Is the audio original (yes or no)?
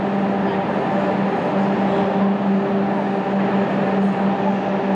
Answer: yes